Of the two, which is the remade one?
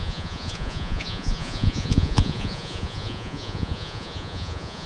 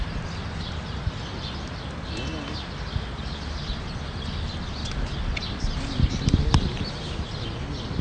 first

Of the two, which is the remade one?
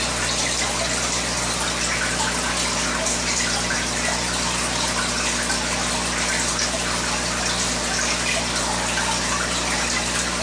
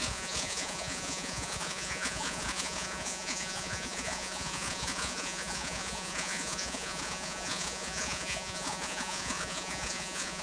second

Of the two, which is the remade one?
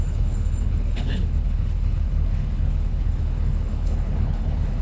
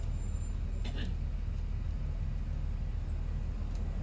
first